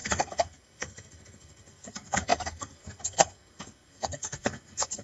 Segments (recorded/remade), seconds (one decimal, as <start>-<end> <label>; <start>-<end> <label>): 0.0-5.0 remade